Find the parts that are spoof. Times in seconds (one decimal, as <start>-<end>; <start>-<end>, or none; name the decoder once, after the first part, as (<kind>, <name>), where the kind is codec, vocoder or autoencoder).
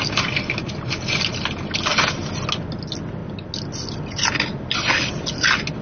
none